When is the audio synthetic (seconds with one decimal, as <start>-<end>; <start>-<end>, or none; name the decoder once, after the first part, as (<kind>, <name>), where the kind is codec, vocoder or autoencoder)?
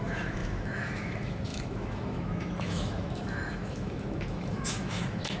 0.0-5.4 (autoencoder, DAC-VAE)